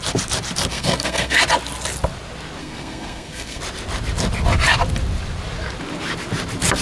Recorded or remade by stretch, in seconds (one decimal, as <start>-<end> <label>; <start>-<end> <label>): 0.0-0.7 recorded; 0.7-1.4 remade; 1.4-2.6 recorded; 2.6-3.6 remade; 3.6-6.8 recorded